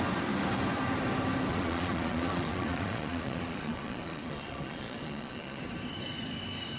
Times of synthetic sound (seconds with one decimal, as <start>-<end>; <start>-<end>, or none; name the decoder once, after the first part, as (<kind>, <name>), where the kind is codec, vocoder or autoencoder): 1.5-5.6 (vocoder, Vocos)